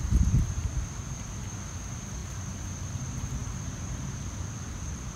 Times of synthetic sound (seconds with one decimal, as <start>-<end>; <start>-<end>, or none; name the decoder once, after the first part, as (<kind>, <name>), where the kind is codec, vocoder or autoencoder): 0.6-1.4 (vocoder, BigVGAN v2); 3.4-5.2